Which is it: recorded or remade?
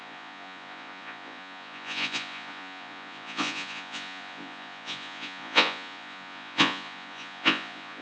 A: remade